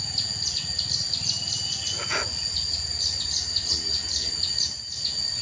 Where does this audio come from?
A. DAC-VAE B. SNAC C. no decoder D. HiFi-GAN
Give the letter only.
C